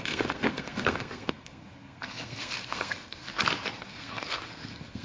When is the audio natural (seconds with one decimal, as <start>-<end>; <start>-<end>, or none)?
3.3-3.8